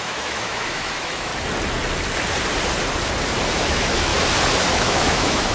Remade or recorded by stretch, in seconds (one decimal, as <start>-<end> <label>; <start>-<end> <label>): 0.0-1.3 remade; 1.3-3.6 recorded; 3.6-4.1 remade; 4.1-4.7 recorded; 4.7-5.5 remade